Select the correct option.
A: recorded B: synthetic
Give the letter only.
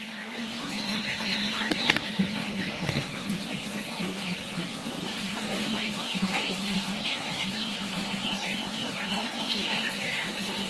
B